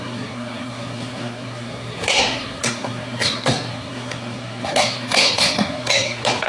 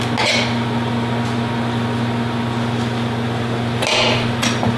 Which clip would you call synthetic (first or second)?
first